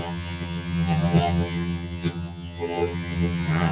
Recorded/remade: remade